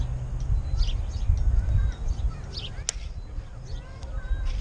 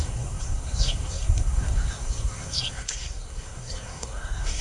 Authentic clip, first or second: first